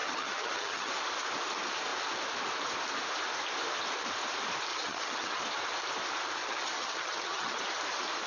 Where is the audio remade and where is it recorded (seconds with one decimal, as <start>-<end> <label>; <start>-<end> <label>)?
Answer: 0.0-0.9 remade; 0.9-4.7 recorded; 4.7-5.4 remade; 5.4-6.4 recorded; 6.4-7.6 remade; 7.6-8.3 recorded

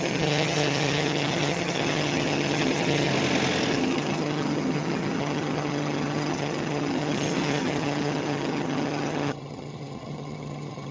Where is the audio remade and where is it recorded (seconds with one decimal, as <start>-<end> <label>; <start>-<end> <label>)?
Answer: 0.0-3.1 remade; 3.1-3.7 recorded; 3.7-10.9 remade

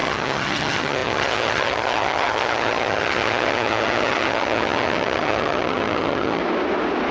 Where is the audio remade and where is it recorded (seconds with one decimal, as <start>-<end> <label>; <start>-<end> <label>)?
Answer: 0.0-6.4 remade; 6.4-7.1 recorded

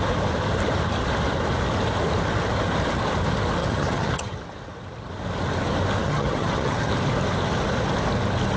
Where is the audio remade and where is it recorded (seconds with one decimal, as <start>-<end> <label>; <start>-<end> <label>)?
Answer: 0.0-3.6 recorded; 3.6-4.4 remade; 4.4-6.0 recorded; 6.0-6.9 remade; 6.9-8.6 recorded

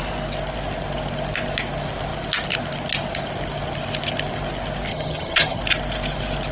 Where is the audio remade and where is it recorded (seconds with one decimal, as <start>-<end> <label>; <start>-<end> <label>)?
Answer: 0.0-4.9 recorded; 4.9-5.6 remade; 5.6-6.5 recorded

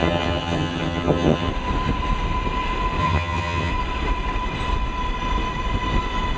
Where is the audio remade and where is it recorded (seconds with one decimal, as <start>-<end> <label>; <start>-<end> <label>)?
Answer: 0.0-1.5 remade; 1.5-3.0 recorded; 3.0-3.7 remade; 3.7-6.4 recorded

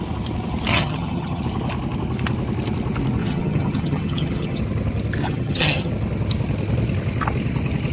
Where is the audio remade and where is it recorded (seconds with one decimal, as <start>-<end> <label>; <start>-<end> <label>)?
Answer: 0.0-0.7 recorded; 0.7-1.4 remade; 1.4-3.2 recorded; 3.2-4.6 remade; 4.6-5.2 recorded; 5.2-5.9 remade; 5.9-7.9 recorded